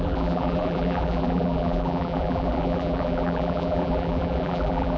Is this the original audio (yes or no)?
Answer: no